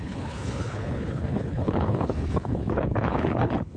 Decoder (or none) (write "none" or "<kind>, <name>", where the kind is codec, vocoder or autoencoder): codec, HILCodec